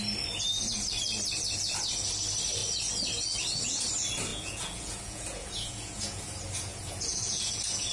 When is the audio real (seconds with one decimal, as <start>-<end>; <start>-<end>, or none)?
0.0-4.3; 6.2-6.7